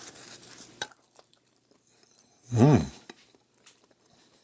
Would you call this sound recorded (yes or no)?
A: no